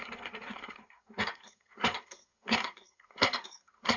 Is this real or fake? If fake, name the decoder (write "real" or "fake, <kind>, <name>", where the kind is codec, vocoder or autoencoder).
fake, codec, SNAC